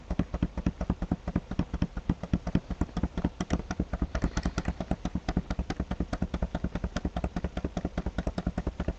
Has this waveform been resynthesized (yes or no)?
yes